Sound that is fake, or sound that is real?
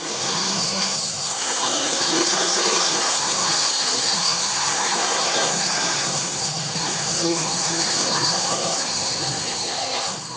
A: fake